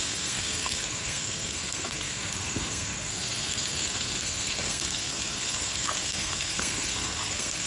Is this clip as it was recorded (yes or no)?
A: no